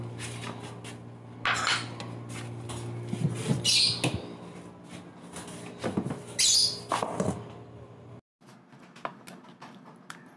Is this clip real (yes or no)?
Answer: yes